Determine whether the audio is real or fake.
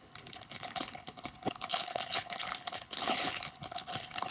fake